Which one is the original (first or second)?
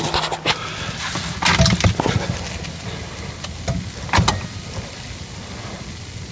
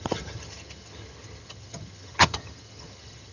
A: first